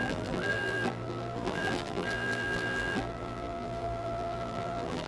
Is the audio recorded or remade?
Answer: remade